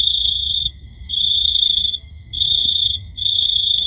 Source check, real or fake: fake